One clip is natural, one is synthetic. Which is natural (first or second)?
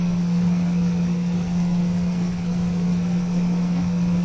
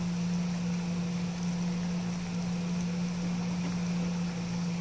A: second